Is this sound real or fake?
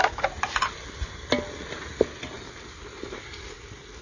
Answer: real